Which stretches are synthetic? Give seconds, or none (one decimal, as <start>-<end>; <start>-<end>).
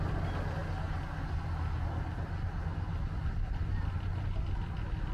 none